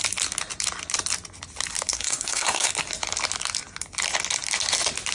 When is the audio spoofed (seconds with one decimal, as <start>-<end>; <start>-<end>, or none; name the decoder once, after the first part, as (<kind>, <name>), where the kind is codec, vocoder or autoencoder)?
1.9-2.7 (codec, SNAC)